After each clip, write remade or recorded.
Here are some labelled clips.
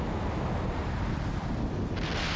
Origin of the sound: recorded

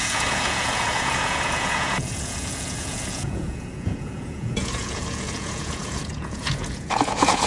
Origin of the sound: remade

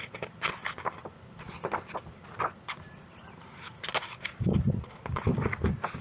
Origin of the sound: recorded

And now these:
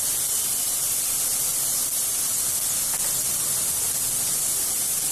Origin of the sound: recorded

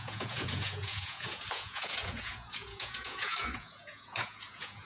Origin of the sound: remade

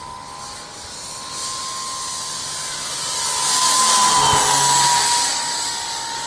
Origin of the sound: recorded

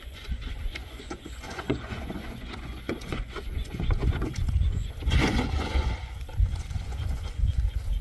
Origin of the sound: remade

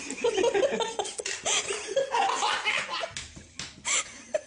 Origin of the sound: recorded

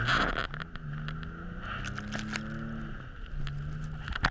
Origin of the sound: recorded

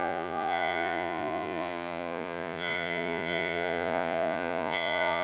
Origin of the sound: remade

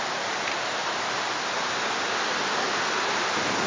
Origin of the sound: recorded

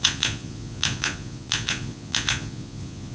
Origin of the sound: remade